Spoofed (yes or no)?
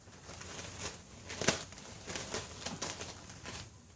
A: no